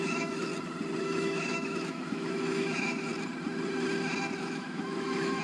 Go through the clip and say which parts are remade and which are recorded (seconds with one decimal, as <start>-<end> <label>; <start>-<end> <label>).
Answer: 0.0-0.5 remade; 0.5-1.0 recorded; 1.0-3.1 remade; 3.1-4.4 recorded; 4.4-5.4 remade